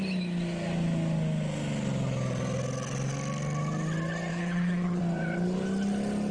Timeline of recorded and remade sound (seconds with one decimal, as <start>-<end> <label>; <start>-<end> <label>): 0.0-4.3 recorded; 4.3-5.0 remade; 5.0-6.3 recorded